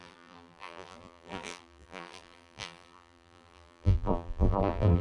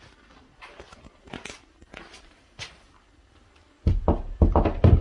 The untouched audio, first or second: second